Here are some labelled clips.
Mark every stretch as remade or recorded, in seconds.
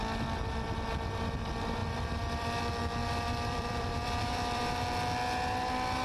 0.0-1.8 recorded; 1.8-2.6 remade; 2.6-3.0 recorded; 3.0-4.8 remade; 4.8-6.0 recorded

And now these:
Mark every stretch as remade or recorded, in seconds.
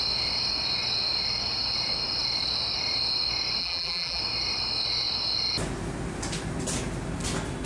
0.0-3.6 recorded; 3.6-4.2 remade; 4.2-7.7 recorded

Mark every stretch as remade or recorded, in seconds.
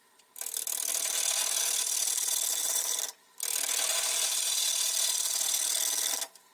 0.0-0.9 recorded; 0.9-1.6 remade; 1.6-2.5 recorded; 2.5-3.0 remade; 3.0-3.9 recorded; 3.9-4.5 remade; 4.5-6.5 recorded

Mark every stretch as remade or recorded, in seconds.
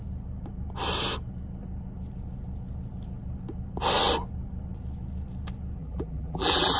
0.0-5.8 recorded; 5.8-6.8 remade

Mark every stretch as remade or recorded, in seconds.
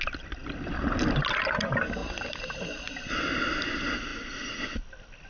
0.0-2.0 recorded; 2.0-2.8 remade; 2.8-5.3 recorded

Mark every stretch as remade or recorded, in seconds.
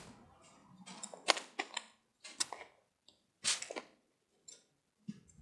0.0-5.4 recorded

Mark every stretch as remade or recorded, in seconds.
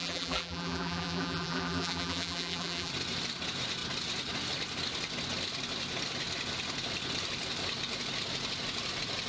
0.0-2.9 remade; 2.9-9.3 recorded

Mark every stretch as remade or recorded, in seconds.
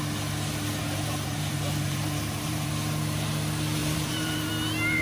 0.0-0.8 recorded; 0.8-2.7 remade; 2.7-3.8 recorded; 3.8-4.5 remade; 4.5-5.0 recorded